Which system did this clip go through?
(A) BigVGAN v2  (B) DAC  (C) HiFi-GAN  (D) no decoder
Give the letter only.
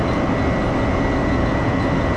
D